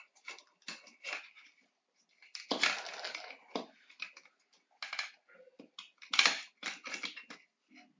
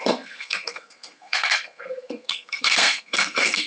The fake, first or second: second